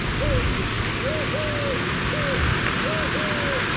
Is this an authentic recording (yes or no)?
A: yes